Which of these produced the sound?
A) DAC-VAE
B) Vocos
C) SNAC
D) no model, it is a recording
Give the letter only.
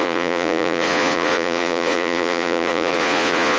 B